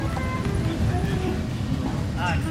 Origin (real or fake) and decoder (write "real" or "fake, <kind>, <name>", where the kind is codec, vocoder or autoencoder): real